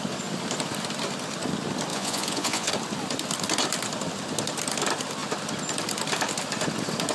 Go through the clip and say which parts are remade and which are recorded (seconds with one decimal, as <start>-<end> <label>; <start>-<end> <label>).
0.0-1.9 recorded; 1.9-2.7 remade; 2.7-7.1 recorded